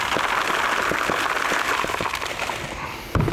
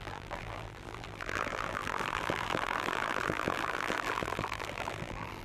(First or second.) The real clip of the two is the first